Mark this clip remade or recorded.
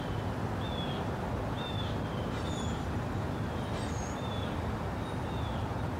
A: recorded